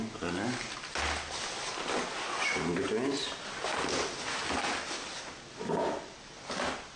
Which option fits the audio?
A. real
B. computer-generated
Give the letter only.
A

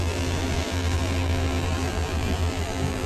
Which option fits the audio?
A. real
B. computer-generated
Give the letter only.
B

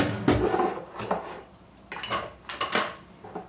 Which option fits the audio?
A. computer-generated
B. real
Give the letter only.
B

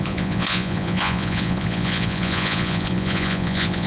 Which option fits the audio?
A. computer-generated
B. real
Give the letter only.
A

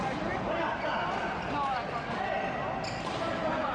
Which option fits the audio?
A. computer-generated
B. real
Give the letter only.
B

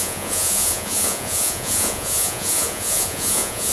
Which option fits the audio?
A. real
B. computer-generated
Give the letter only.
B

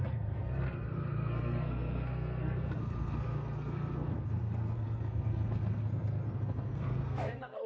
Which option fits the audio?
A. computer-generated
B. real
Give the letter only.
A